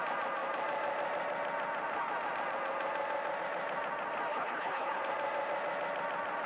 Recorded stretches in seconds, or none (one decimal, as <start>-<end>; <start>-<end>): 0.0-4.3; 5.0-6.5